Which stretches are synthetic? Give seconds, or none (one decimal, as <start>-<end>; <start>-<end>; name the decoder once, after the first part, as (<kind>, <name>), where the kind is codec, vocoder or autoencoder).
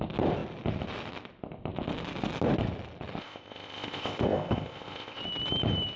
3.2-5.2 (codec, ZipCodec)